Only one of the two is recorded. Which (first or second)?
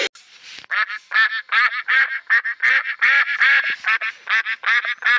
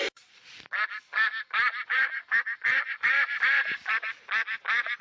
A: first